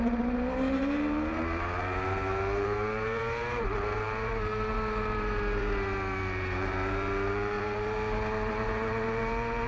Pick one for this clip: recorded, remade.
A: remade